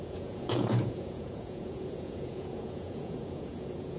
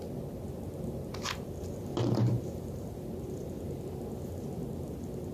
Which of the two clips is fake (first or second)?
first